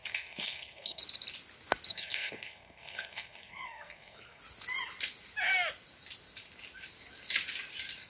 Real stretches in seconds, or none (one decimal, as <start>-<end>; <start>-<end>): 1.0-1.9; 4.4-8.1